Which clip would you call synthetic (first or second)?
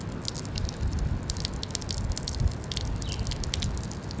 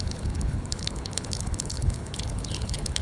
second